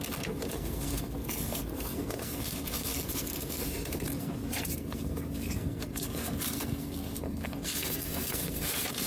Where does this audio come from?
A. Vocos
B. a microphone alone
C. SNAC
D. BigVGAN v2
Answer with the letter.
C